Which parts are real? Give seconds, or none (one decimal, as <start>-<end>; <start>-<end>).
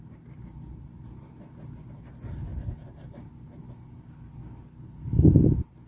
0.0-0.7; 1.4-2.5; 3.3-5.9